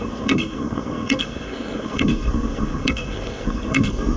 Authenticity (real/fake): fake